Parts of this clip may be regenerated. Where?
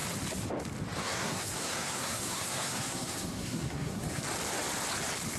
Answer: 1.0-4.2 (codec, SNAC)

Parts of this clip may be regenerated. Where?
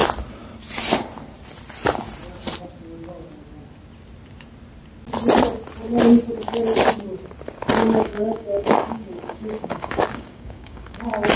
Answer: 7.8-11.0 (codec, DAC)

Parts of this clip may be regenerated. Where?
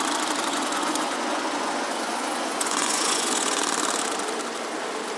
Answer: 0.5-3.6 (vocoder, Vocos)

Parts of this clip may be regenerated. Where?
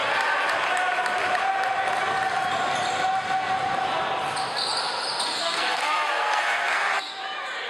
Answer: 5.4-7.1 (codec, SNAC)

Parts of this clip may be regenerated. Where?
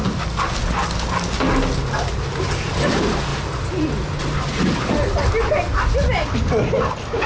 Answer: none